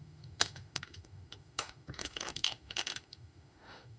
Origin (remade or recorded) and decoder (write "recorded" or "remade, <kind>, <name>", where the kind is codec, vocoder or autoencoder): remade, autoencoder, DAC-VAE